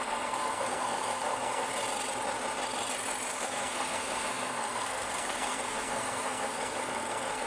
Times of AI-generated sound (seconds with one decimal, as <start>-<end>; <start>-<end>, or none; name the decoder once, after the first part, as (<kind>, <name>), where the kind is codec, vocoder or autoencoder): 0.0-1.7 (codec, SNAC); 3.3-7.5